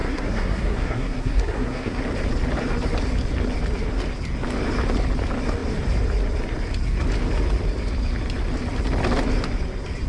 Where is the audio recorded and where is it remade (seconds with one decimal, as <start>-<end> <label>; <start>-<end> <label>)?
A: 0.0-2.0 remade; 2.0-10.1 recorded